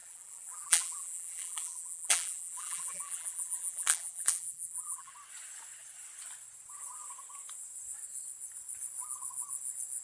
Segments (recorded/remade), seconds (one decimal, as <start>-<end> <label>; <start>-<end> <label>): 0.0-5.1 remade; 5.1-10.0 recorded